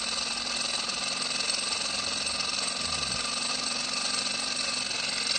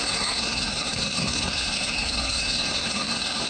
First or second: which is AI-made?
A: second